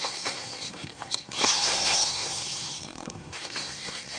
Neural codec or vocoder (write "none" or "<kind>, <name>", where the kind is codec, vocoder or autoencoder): codec, SNAC